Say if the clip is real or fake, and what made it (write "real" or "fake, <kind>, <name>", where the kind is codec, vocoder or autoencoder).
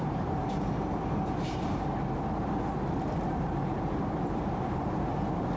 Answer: fake, vocoder, BigVGAN v2